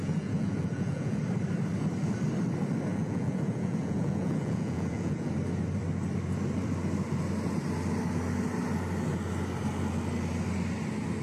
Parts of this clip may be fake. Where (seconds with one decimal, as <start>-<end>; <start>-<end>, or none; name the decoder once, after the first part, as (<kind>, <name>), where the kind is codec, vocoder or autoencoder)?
0.0-1.2 (vocoder, Vocos); 2.9-5.3